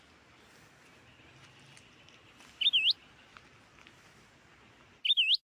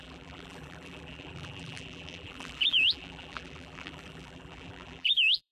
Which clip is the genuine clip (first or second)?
first